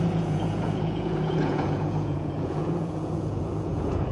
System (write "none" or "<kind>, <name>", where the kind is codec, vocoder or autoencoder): vocoder, Vocos